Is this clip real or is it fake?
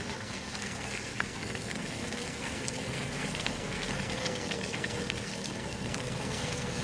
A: fake